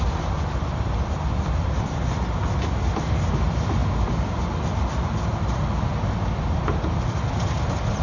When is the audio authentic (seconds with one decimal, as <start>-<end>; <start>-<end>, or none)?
0.0-8.0